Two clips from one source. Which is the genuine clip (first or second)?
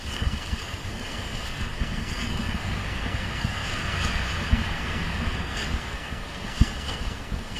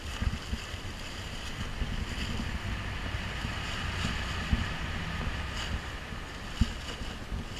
second